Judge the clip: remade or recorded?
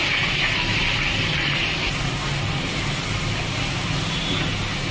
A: recorded